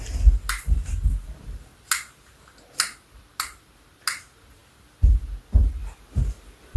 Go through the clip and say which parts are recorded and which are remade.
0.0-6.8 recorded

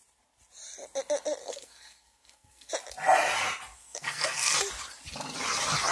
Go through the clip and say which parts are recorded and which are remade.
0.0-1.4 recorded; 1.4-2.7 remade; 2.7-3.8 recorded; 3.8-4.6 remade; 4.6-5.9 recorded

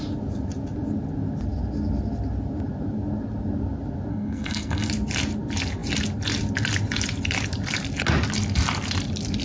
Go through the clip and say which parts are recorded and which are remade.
0.0-4.1 recorded; 4.1-4.9 remade; 4.9-9.4 recorded